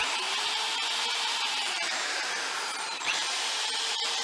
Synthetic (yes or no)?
yes